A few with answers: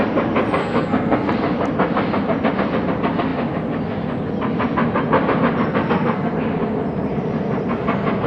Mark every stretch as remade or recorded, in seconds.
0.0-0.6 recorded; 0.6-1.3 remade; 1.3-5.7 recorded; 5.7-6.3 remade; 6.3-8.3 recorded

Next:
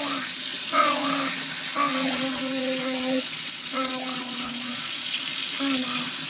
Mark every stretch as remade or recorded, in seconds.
0.0-0.5 recorded; 0.5-1.1 remade; 1.1-1.9 recorded; 1.9-5.2 remade; 5.2-6.3 recorded

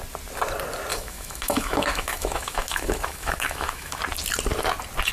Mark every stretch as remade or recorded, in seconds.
0.0-0.9 recorded; 0.9-4.0 remade; 4.0-5.1 recorded

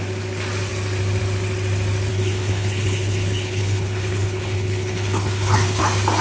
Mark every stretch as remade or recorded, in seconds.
0.0-2.1 recorded; 2.1-5.8 remade; 5.8-6.2 recorded

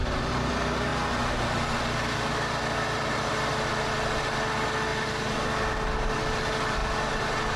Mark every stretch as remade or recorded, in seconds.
0.0-7.6 recorded